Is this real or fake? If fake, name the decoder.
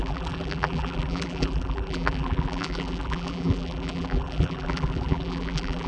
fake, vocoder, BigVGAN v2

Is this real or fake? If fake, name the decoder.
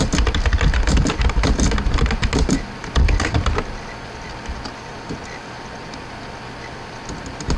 real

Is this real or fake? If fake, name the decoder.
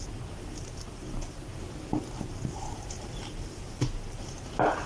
real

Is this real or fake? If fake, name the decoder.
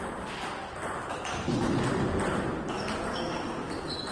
real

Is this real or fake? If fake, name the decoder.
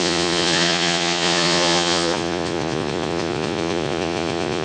fake, vocoder, Vocos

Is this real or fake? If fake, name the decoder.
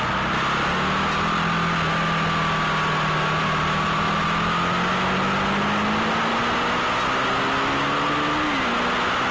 real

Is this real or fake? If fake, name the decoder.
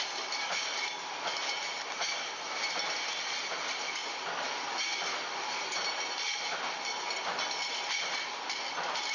real